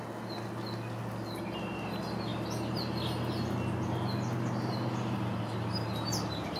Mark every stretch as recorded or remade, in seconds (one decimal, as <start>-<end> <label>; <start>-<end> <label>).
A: 0.0-6.6 recorded